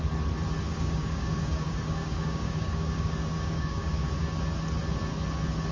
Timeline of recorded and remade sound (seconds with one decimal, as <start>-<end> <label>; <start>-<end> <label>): 0.0-0.7 recorded; 0.7-4.1 remade; 4.1-5.7 recorded